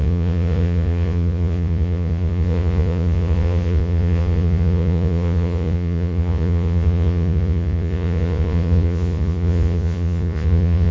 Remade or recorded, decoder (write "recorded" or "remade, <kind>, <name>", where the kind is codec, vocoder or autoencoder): remade, vocoder, Vocos